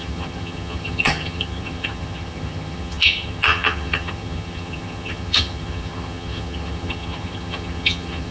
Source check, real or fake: fake